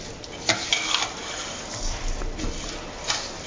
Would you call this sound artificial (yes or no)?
no